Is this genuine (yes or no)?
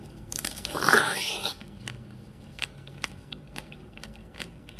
no